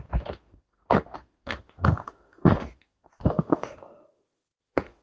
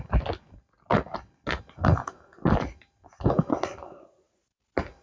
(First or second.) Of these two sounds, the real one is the second